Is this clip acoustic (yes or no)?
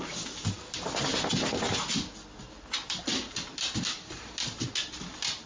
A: yes